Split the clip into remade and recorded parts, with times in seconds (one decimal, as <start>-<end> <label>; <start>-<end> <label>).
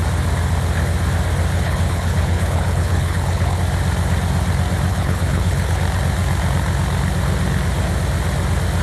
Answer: 0.0-1.5 recorded; 1.5-3.6 remade; 3.6-4.9 recorded; 4.9-5.8 remade; 5.8-8.8 recorded